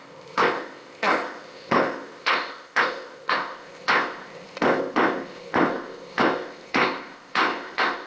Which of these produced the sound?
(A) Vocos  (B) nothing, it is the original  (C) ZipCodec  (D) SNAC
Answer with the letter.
C